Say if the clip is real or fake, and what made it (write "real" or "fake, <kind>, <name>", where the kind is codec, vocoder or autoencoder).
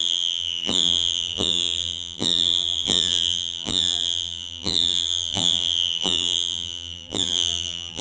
fake, vocoder, BigVGAN v2